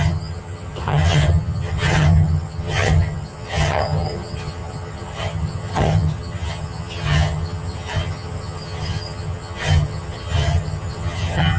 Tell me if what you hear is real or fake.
fake